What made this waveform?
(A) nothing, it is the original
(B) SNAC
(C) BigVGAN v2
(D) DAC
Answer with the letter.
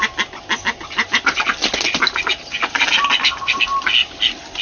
A